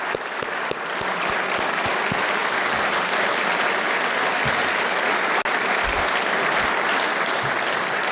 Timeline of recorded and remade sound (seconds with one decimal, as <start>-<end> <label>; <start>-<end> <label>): 0.0-8.1 recorded